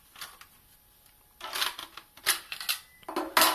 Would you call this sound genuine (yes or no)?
yes